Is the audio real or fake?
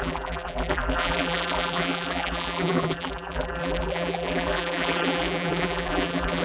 fake